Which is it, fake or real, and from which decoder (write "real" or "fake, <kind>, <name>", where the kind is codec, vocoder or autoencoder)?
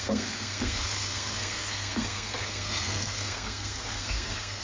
fake, codec, SNAC